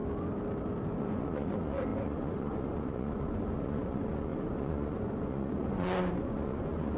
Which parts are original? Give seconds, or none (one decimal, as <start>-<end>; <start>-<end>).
0.0-1.0